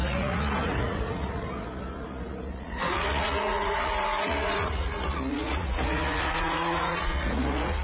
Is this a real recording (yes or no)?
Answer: no